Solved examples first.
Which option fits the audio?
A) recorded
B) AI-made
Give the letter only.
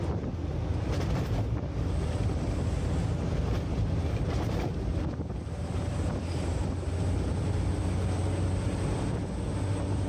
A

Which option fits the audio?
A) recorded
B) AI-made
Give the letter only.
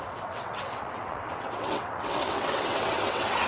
B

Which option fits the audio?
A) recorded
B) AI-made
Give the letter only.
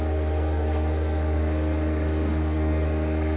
B